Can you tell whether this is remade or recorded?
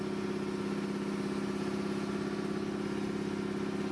recorded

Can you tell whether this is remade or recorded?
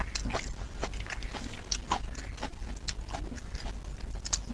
recorded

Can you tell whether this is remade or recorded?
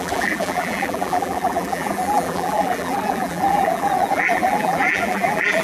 remade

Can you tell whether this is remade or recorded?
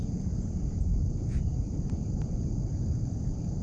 remade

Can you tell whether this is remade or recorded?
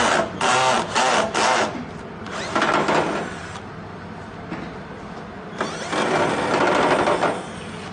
recorded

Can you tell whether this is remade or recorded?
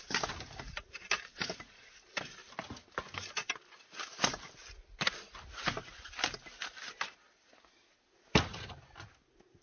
recorded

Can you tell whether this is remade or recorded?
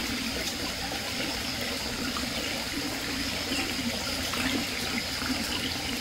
recorded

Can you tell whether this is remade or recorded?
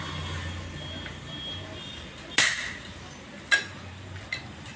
recorded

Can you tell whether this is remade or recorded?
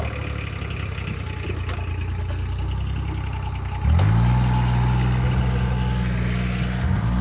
recorded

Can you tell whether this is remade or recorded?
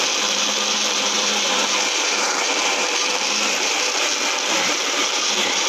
remade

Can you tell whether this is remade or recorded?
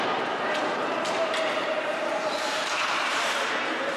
remade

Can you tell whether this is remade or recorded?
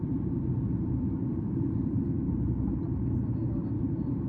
remade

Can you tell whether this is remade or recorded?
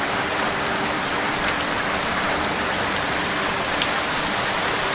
remade